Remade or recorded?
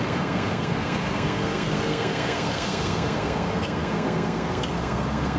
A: remade